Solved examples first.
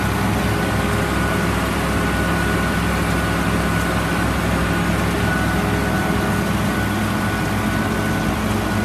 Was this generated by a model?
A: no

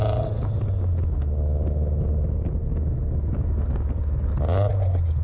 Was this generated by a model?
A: no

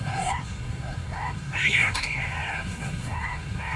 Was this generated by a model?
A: yes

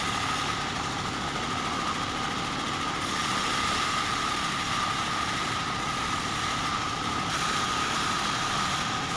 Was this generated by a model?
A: no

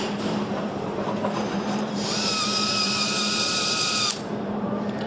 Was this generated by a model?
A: yes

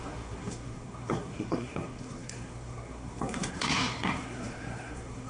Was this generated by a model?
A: yes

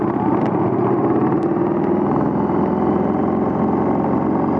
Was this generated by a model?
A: no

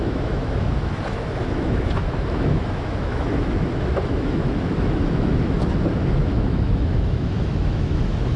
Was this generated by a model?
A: yes